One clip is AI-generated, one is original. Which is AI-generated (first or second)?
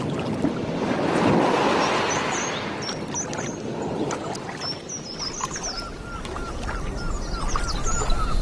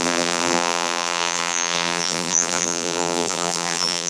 second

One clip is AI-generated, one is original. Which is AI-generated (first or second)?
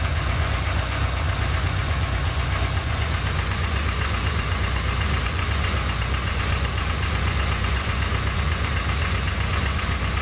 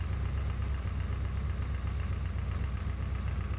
first